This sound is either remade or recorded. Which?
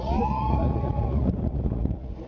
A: remade